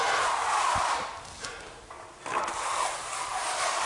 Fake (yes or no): no